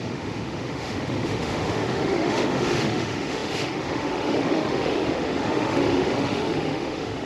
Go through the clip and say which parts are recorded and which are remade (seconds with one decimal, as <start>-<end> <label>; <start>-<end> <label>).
0.0-7.3 remade

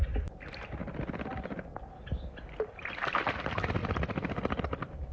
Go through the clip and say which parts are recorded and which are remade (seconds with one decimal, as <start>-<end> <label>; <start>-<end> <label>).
0.0-5.1 recorded